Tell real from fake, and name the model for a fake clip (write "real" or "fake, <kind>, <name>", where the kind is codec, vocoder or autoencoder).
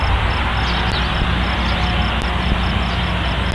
real